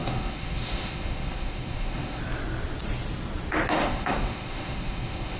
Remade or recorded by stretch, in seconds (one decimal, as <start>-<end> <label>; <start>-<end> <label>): 0.0-2.2 remade; 2.2-3.7 recorded; 3.7-5.4 remade